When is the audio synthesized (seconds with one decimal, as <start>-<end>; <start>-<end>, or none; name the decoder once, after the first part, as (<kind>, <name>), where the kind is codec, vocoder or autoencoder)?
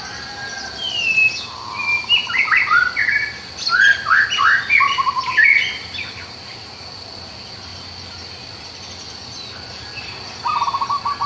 none